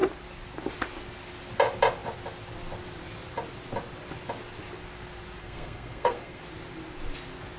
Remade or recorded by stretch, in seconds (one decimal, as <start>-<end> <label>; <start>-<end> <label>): 0.0-5.4 recorded; 5.4-6.4 remade; 6.4-7.6 recorded